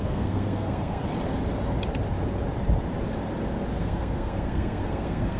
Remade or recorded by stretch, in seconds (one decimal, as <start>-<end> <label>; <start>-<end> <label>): 0.0-1.0 remade; 1.0-3.8 recorded; 3.8-5.4 remade